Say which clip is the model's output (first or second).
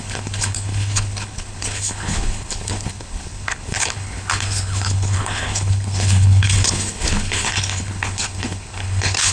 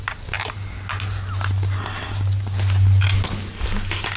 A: first